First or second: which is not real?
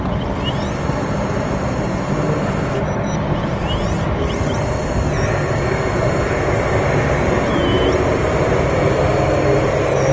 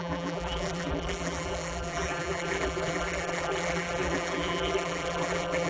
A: second